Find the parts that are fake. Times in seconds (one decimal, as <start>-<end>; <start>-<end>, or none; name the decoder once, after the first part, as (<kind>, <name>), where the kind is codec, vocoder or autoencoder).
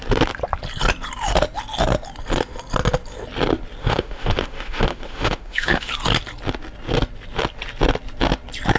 3.8-5.9 (autoencoder, DAC-VAE)